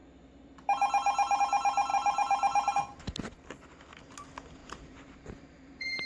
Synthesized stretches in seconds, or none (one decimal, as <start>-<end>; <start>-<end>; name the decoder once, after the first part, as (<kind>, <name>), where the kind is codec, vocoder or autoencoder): 1.9-2.7 (vocoder, BigVGAN v2); 4.6-6.1